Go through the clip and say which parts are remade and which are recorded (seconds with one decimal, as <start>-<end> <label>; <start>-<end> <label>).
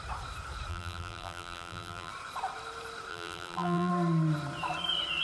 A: 0.0-0.7 recorded; 0.7-2.1 remade; 2.1-3.1 recorded; 3.1-3.9 remade; 3.9-5.2 recorded